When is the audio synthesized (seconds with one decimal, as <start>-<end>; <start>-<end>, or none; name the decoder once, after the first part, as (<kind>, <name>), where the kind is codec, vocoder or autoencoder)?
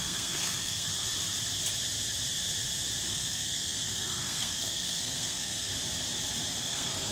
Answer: 0.0-0.9 (codec, SNAC); 3.1-5.7; 6.6-7.1